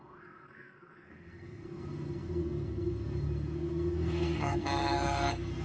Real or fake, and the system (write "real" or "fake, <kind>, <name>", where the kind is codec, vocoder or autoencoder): fake, codec, SNAC